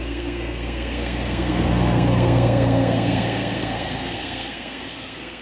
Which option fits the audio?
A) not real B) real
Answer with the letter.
A